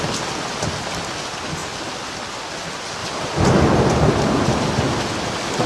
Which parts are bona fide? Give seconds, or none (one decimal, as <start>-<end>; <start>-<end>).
0.0-1.6; 2.6-3.0; 3.5-5.7